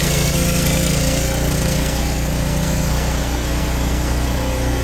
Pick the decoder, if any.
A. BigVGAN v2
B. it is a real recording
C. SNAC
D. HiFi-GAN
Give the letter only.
C